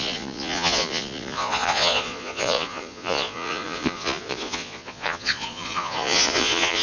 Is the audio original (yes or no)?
no